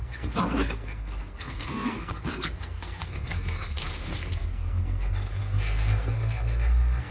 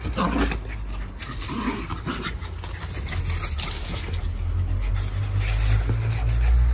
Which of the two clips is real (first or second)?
second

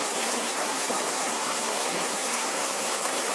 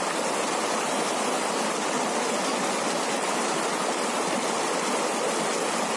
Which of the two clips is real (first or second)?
second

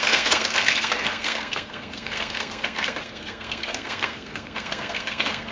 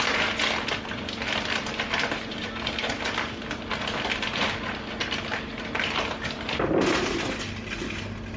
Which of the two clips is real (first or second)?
second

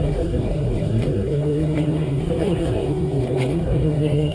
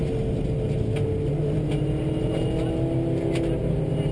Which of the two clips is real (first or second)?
second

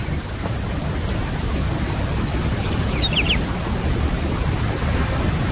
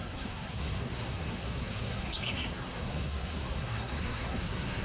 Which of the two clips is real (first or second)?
first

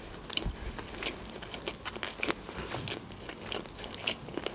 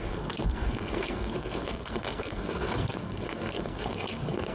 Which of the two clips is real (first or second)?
first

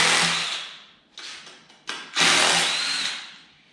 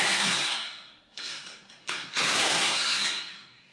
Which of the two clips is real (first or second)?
first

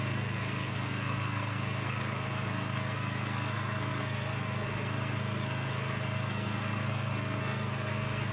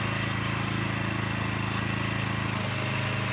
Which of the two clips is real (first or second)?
second